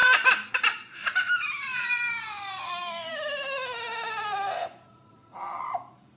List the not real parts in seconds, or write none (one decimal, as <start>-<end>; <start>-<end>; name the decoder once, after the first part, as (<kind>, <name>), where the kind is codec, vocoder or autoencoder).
0.0-1.3 (vocoder, BigVGAN v2); 4.9-5.7